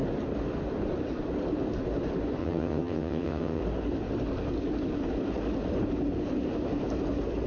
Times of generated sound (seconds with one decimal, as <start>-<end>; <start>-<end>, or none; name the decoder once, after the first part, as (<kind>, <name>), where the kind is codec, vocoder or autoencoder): 2.4-3.6 (vocoder, HiFi-GAN)

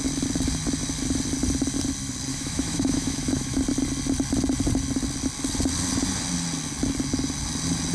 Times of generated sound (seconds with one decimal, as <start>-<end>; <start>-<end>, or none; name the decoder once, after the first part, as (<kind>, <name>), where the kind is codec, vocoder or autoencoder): 2.3-3.6 (autoencoder, DAC-VAE)

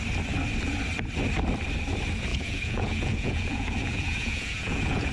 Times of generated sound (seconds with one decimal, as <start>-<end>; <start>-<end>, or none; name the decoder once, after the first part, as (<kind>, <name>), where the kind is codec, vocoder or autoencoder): 2.3-5.1 (vocoder, Vocos)

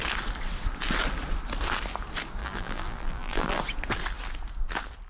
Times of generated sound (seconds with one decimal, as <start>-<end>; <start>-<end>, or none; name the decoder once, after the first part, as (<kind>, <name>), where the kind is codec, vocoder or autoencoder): 2.4-3.6 (vocoder, BigVGAN v2)

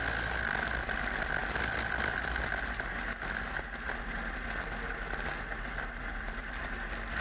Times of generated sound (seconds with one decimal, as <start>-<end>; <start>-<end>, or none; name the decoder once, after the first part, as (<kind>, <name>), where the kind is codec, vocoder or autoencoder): none

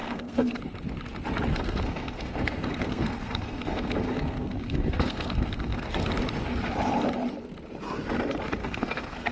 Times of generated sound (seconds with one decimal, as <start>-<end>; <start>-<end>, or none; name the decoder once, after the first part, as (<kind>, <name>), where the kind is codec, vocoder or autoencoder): 0.0-0.6 (codec, SNAC); 1.5-6.1; 8.6-9.3

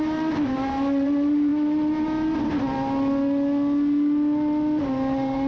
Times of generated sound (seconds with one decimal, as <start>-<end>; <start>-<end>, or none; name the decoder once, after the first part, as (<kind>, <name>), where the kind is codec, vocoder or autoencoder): 0.0-1.5 (vocoder, BigVGAN v2); 4.8-5.5